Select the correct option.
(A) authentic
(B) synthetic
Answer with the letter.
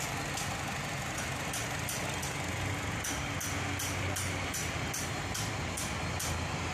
A